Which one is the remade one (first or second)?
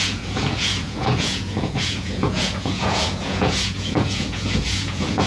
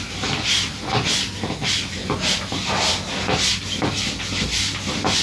first